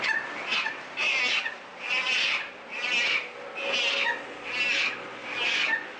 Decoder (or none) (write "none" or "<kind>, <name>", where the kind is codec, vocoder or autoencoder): none